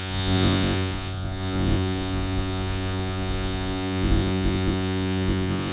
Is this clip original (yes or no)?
no